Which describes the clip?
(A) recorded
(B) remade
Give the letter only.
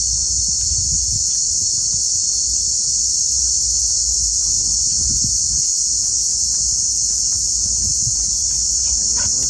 A